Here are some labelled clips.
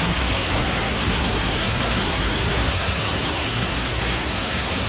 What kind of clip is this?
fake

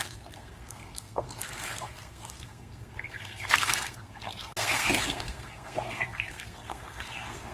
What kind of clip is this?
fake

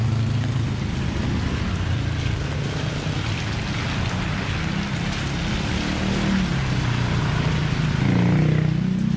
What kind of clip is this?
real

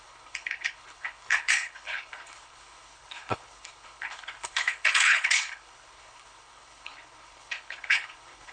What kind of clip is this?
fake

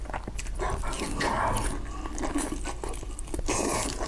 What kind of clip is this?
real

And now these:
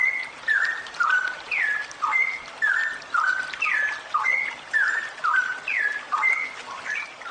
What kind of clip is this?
real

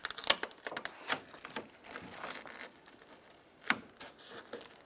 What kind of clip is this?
real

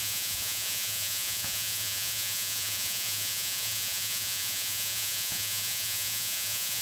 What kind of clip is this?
fake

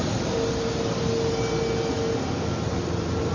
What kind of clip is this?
real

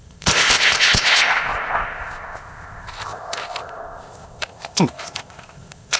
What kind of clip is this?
fake